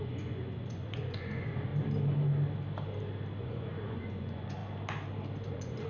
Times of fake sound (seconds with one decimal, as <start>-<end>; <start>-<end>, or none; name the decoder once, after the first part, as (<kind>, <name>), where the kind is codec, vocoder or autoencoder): 0.0-1.7 (vocoder, Vocos); 3.4-4.6; 5.5-5.9